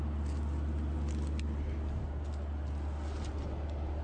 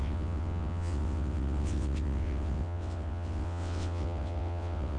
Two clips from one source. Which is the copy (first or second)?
second